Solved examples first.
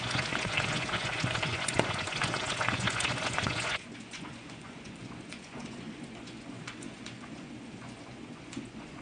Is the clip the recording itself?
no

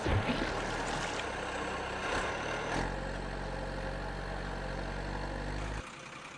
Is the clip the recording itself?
yes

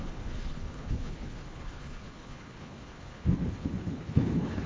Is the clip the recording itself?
no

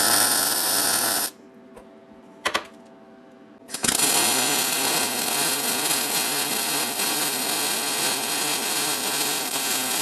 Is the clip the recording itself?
yes